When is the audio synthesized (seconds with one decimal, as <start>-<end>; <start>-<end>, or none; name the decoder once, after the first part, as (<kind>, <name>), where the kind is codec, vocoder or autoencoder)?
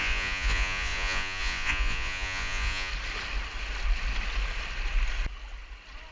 0.0-2.9 (vocoder, Vocos)